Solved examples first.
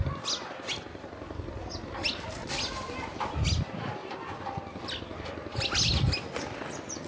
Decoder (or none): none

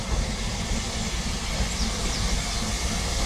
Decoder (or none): none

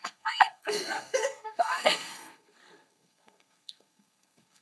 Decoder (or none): codec, SNAC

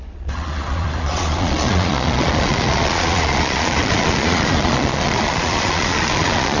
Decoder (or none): vocoder, Vocos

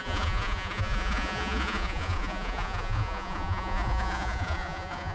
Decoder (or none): vocoder, Vocos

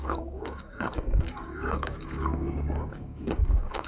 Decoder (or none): codec, DAC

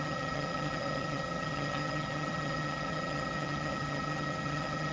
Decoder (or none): vocoder, HiFi-GAN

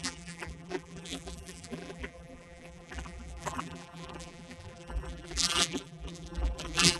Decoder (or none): vocoder, BigVGAN v2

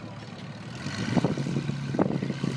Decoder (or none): none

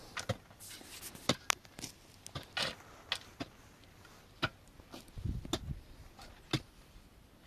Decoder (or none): none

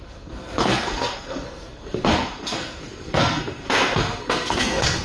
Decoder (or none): codec, SNAC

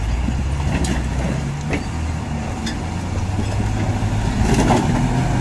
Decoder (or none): none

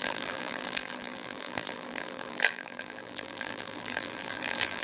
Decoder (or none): vocoder, BigVGAN v2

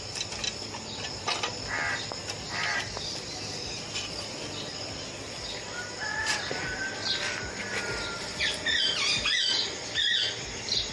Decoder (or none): vocoder, BigVGAN v2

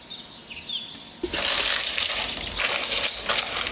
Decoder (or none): none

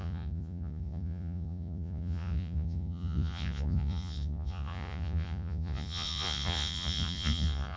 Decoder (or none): vocoder, Vocos